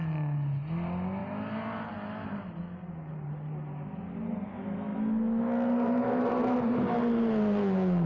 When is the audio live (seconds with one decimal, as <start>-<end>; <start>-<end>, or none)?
0.0-8.1